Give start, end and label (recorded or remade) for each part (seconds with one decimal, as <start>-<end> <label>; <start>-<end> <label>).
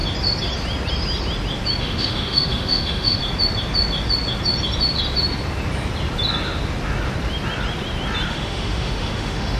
0.0-1.8 recorded; 1.8-3.2 remade; 3.2-8.3 recorded; 8.3-9.6 remade